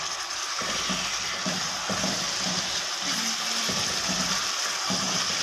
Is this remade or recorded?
recorded